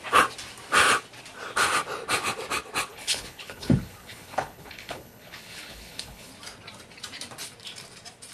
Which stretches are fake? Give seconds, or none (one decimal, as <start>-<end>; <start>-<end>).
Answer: 2.9-6.3